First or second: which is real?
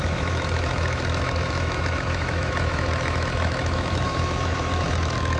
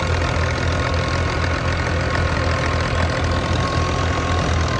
second